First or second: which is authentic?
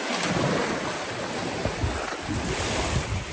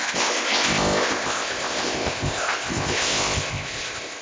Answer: first